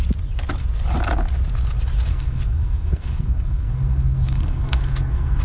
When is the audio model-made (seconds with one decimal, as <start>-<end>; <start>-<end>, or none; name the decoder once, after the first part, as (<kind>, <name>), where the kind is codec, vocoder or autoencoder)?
2.1-5.4 (codec, SNAC)